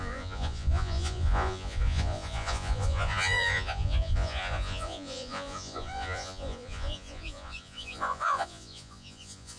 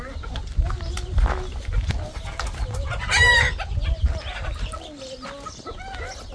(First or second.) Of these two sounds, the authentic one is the second